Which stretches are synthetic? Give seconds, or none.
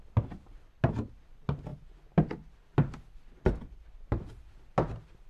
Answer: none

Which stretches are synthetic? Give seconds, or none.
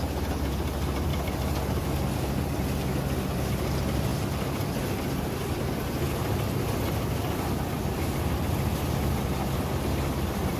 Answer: 1.1-1.9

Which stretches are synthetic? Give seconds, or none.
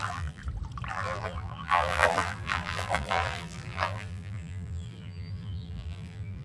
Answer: 0.0-0.4; 0.9-6.4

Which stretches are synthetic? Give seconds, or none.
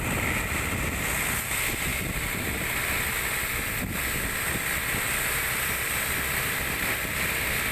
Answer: none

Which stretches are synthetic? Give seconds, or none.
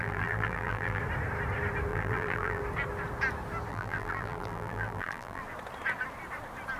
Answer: 0.0-1.0; 1.9-2.6; 3.7-5.4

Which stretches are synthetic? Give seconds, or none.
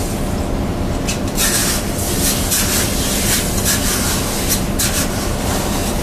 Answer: none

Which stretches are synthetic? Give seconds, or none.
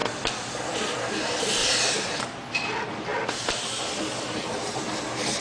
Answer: 1.6-2.2